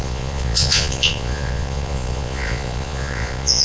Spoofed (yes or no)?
yes